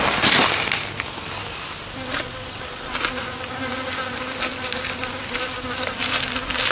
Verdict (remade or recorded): recorded